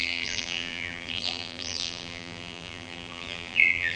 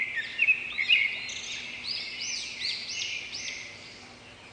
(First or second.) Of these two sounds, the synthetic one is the first